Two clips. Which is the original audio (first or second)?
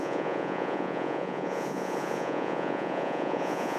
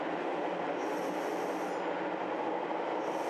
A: second